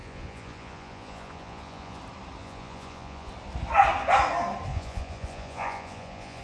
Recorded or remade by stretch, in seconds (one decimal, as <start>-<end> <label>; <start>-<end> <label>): 0.0-2.0 remade; 2.0-2.4 recorded; 2.4-3.3 remade; 3.3-4.7 recorded; 4.7-6.4 remade